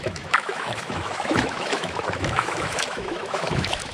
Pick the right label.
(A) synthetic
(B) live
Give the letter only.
A